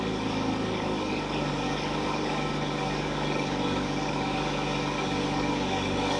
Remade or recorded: remade